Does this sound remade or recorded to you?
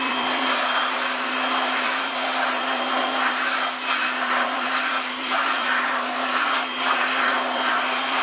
remade